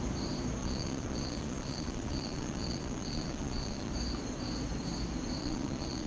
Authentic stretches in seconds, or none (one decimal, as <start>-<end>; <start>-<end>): 0.0-0.6; 3.9-5.4